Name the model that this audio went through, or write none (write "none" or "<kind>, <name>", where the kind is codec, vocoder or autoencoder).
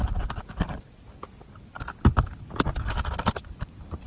none